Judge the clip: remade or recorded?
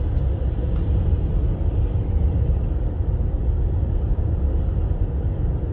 recorded